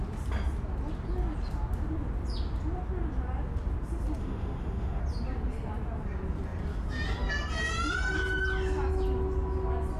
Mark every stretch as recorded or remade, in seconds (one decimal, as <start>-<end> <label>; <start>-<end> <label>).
0.0-4.2 recorded; 4.2-5.0 remade; 5.0-10.0 recorded